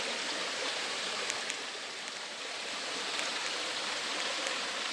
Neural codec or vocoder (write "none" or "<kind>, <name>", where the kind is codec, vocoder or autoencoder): none